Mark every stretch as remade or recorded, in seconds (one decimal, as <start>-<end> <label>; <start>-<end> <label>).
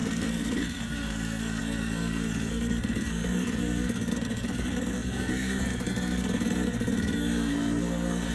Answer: 0.0-8.3 remade